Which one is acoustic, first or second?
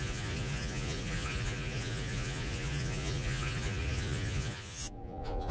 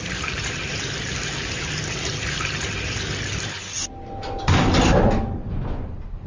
second